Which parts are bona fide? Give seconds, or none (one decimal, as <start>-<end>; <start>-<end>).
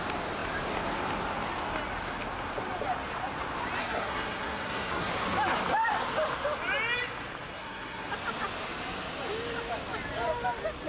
0.0-3.8; 5.1-7.5; 8.1-10.9